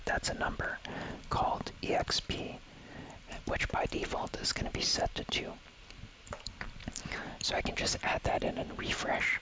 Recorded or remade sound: remade